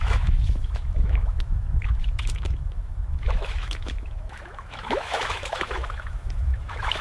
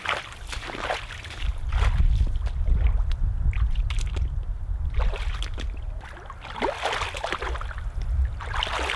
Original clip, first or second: second